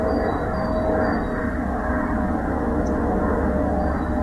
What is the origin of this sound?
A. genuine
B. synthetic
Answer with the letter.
A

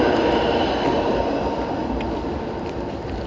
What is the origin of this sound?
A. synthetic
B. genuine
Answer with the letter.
A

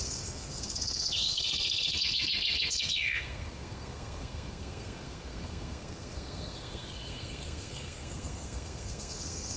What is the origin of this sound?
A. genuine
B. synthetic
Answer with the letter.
B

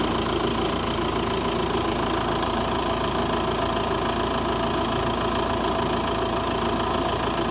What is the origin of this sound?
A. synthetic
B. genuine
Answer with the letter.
B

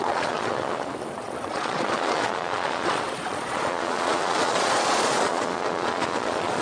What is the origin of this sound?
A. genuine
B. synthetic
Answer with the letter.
B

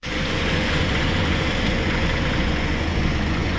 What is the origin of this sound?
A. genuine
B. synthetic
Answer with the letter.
B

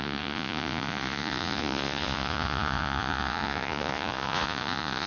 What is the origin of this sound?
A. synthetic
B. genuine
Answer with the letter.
A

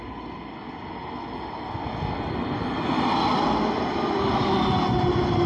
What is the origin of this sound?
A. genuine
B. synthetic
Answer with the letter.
A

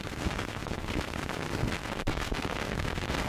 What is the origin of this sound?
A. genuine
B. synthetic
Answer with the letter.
B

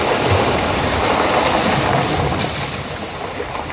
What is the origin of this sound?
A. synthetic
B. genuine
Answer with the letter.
B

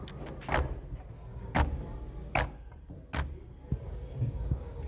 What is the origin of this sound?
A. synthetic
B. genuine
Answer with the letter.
B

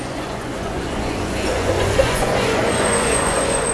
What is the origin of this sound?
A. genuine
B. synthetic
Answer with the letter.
B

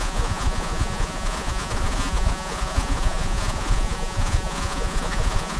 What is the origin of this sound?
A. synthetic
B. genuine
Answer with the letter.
A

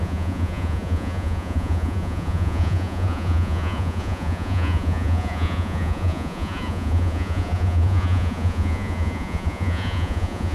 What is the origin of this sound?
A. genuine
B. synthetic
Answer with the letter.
B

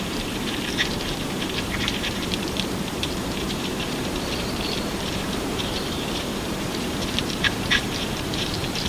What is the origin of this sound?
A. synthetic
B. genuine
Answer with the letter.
A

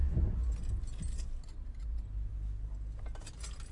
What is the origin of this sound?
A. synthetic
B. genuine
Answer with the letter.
B